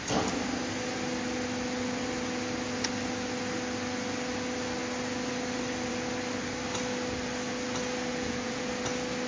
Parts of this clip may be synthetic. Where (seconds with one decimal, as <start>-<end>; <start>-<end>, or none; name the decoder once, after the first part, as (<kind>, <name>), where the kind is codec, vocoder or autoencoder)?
8.1-8.7 (vocoder, Vocos)